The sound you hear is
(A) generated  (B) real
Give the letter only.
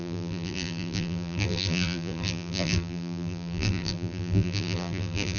A